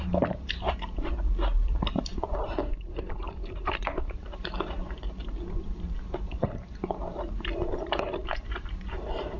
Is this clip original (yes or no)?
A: no